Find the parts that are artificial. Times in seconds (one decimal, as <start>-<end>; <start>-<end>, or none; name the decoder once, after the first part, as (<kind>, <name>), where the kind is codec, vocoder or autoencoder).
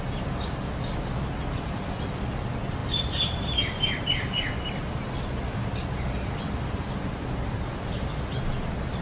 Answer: none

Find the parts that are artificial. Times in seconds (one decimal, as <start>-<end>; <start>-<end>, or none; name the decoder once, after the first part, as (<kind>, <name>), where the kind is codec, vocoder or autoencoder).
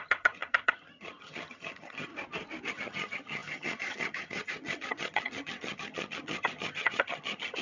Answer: 0.0-2.1 (vocoder, HiFi-GAN); 2.7-7.6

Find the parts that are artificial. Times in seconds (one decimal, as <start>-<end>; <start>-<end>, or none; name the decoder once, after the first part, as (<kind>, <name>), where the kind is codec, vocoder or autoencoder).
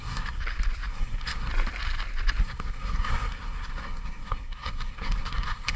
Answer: 0.0-0.4 (codec, SNAC); 0.9-1.5; 2.4-5.8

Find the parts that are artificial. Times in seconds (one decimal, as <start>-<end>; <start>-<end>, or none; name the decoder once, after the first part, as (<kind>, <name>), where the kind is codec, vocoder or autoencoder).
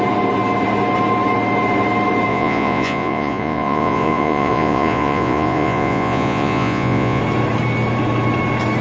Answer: 2.3-7.2 (vocoder, Vocos)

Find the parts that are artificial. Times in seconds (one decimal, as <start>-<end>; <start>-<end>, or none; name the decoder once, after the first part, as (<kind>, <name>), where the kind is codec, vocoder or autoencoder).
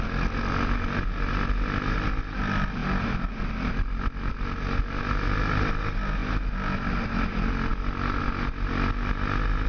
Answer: none